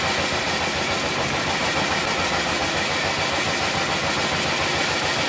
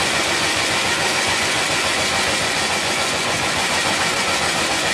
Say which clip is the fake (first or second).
second